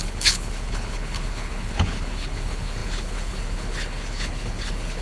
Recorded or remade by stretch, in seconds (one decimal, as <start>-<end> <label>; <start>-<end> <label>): 0.0-5.0 remade